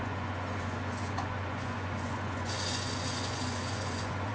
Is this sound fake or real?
fake